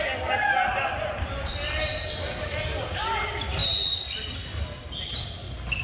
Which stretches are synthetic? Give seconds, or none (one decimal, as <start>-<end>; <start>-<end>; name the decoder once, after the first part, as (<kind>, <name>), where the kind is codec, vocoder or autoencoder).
none